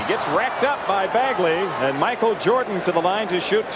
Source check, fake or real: real